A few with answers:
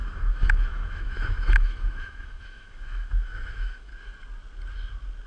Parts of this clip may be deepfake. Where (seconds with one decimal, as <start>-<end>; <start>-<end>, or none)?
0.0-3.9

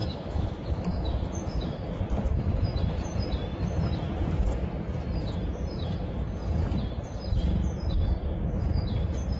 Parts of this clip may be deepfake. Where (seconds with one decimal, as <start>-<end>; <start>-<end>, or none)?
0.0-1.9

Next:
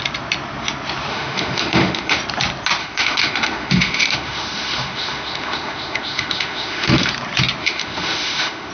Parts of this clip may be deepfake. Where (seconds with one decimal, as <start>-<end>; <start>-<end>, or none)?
1.1-2.2; 2.8-7.1; 7.6-8.7

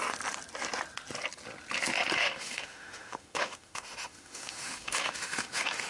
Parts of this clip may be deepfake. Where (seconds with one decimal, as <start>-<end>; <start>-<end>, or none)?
2.2-5.9

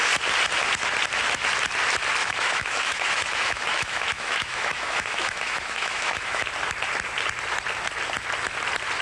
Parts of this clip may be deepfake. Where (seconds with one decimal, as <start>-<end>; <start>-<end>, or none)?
2.2-6.4

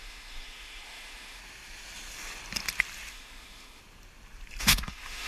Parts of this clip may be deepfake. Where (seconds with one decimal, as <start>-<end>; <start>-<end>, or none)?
0.0-1.4; 3.1-3.8; 4.6-5.3

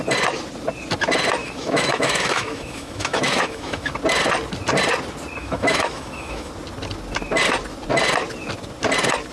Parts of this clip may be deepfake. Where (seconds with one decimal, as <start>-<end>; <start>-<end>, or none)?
1.4-3.9; 5.4-6.5

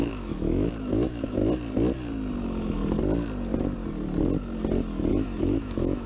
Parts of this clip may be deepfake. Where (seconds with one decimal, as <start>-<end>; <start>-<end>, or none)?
0.0-1.4; 5.1-6.1